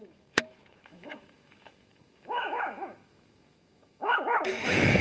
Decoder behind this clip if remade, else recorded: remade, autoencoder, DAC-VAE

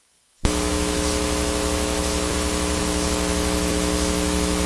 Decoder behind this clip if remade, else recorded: remade, autoencoder, DAC-VAE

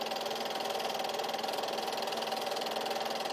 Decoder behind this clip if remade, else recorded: recorded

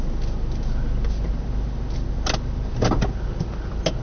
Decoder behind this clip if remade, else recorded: recorded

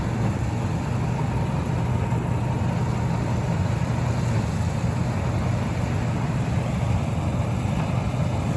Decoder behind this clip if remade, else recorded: recorded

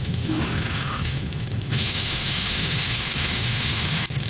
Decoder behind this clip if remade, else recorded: remade, autoencoder, DAC-VAE